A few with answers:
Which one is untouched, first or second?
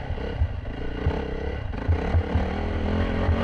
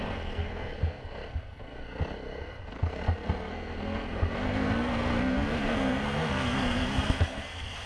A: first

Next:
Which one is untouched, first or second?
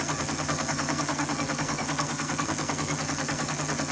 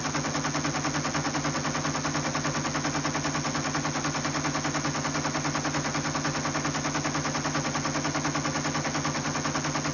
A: second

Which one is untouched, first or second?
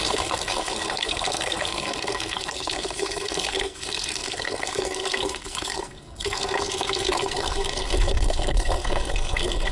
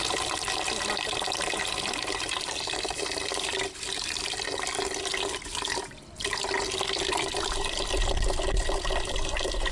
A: second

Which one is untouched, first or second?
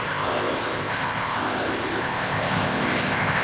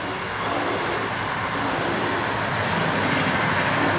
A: second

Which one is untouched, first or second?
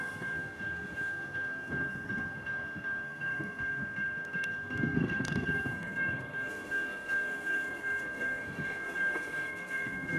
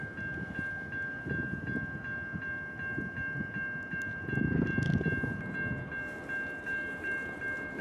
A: second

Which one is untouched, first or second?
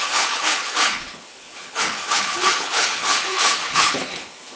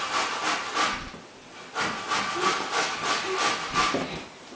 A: second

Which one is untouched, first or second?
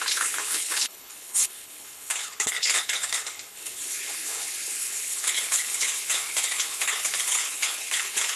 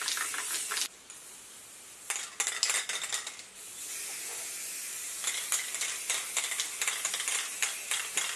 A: second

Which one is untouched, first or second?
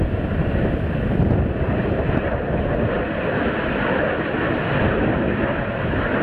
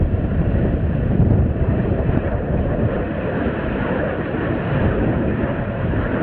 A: first